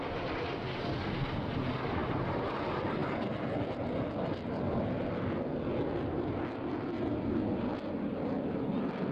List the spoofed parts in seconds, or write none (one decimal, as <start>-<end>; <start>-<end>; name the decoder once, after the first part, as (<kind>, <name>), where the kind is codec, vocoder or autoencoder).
none